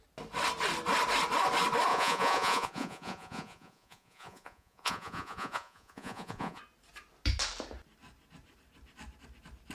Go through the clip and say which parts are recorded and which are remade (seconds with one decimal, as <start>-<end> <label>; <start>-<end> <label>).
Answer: 0.0-1.9 recorded; 1.9-6.6 remade; 6.6-9.7 recorded